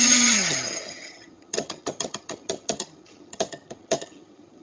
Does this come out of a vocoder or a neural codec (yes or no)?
yes